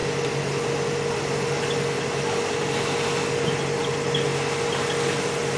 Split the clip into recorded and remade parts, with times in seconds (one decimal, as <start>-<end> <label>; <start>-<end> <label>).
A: 0.0-5.6 recorded